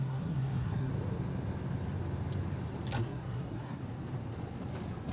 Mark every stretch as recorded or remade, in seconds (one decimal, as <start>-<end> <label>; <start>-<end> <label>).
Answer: 0.0-0.9 remade; 0.9-3.0 recorded; 3.0-3.8 remade; 3.8-5.1 recorded